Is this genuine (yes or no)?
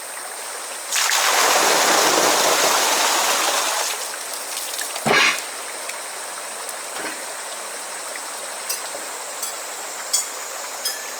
yes